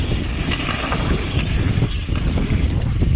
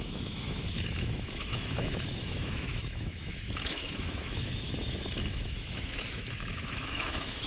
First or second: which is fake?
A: second